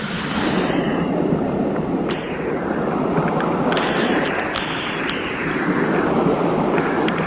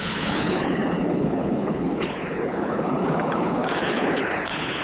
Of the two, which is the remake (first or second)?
second